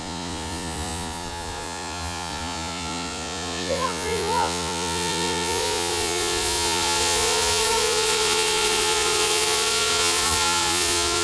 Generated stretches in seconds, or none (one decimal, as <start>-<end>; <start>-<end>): 0.0-11.2